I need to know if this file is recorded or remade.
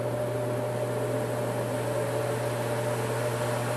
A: recorded